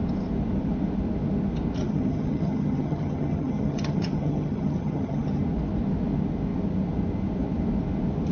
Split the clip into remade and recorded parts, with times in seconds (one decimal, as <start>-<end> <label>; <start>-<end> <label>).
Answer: 0.0-1.8 recorded; 1.8-5.4 remade; 5.4-8.3 recorded